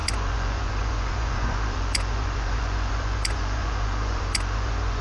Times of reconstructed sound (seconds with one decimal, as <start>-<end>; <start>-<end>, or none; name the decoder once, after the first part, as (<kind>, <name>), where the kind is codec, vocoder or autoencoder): 0.0-5.0 (vocoder, Vocos)